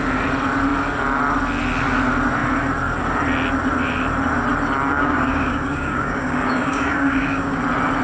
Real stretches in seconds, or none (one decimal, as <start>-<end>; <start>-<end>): 0.0-4.9; 7.6-8.0